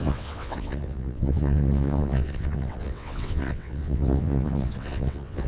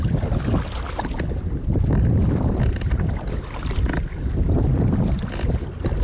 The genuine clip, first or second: second